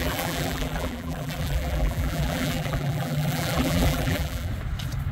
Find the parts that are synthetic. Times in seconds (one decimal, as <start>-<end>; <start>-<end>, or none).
0.0-4.5